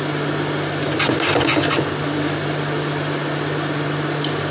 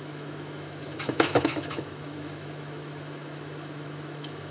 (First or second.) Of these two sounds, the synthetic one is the second